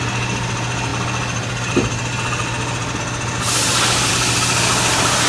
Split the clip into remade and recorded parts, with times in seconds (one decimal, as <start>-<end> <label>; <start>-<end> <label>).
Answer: 0.0-5.3 recorded